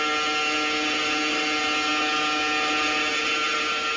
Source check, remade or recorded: recorded